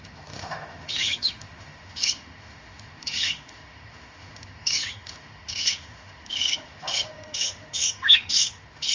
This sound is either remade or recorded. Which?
remade